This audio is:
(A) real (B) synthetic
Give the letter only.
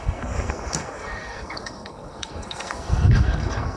B